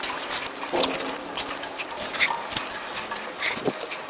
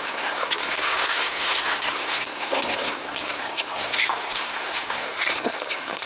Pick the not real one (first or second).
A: second